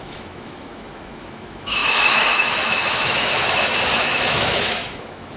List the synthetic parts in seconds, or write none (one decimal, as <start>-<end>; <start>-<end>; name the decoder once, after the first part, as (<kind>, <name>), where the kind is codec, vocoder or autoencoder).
0.0-5.4 (autoencoder, DAC-VAE)